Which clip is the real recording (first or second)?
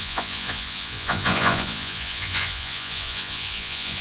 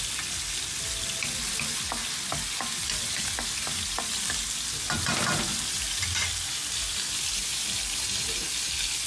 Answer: second